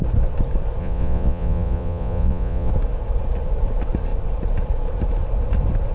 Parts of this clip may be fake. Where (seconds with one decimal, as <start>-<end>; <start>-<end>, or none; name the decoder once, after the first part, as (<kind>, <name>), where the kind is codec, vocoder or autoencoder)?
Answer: 0.8-2.7 (vocoder, Vocos)